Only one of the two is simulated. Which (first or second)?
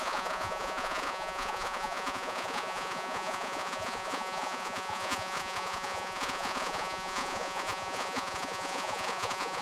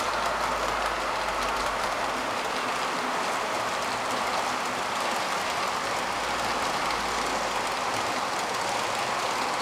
first